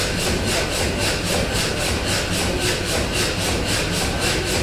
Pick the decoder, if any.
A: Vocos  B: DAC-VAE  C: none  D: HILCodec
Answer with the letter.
C